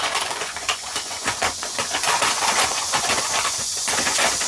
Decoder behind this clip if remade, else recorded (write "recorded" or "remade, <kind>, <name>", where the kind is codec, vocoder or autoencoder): remade, vocoder, Vocos